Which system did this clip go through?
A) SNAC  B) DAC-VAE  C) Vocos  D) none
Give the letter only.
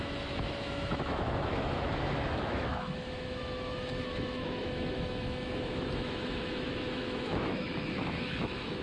B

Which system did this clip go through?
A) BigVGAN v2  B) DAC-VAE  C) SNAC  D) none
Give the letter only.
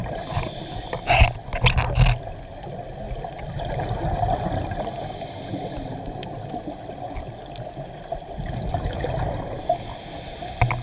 D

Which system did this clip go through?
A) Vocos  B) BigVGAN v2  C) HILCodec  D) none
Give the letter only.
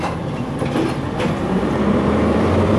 B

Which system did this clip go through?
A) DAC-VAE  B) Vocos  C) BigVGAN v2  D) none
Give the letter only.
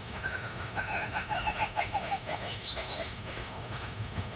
A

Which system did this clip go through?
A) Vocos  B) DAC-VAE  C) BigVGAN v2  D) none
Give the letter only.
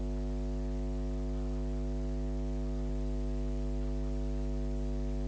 D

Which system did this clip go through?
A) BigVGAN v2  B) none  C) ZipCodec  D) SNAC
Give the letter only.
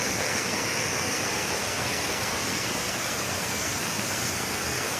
D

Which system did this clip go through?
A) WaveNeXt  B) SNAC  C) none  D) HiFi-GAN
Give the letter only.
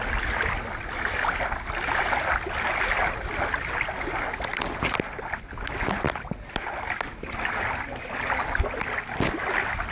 C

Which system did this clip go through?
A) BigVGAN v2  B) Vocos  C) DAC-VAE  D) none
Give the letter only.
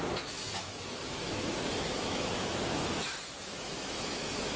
C